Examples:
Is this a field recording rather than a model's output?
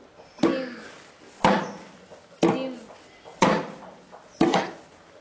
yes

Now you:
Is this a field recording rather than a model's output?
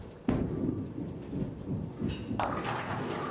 yes